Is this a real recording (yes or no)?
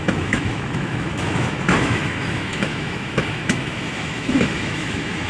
no